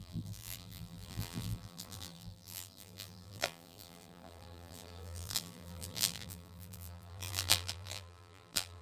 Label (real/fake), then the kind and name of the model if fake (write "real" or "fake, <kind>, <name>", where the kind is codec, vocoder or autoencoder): fake, vocoder, BigVGAN v2